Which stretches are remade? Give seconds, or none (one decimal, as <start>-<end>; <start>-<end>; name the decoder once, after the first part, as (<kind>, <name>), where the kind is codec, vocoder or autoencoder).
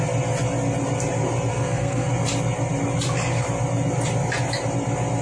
1.5-2.1 (codec, SNAC)